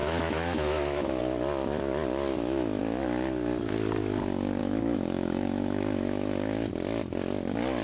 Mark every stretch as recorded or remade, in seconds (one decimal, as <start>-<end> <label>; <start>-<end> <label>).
0.0-1.2 remade; 1.2-2.3 recorded; 2.3-2.8 remade; 2.8-4.6 recorded; 4.6-6.7 remade; 6.7-7.8 recorded